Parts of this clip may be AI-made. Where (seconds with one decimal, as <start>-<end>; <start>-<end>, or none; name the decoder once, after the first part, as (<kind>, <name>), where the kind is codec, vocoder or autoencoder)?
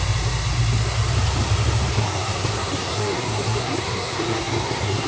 1.9-5.1 (codec, SNAC)